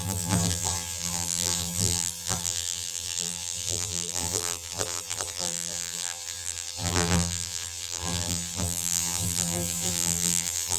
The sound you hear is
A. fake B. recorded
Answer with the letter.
A